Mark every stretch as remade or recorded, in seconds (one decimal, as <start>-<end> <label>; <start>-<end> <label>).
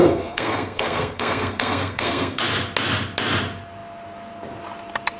0.0-2.4 remade; 2.4-5.2 recorded